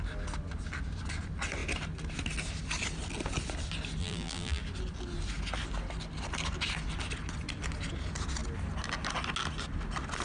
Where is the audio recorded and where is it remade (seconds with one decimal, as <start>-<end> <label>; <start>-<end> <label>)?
0.0-4.0 recorded; 4.0-4.6 remade; 4.6-10.2 recorded